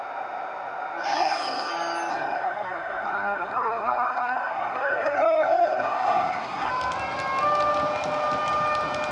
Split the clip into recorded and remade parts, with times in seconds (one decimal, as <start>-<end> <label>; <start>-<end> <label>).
0.0-1.0 recorded; 1.0-1.7 remade; 1.7-2.1 recorded; 2.1-6.7 remade; 6.7-9.1 recorded